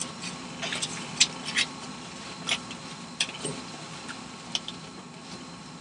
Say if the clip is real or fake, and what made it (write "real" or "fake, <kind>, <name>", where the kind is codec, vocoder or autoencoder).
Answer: real